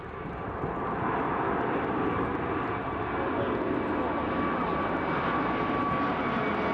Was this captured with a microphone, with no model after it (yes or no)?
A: yes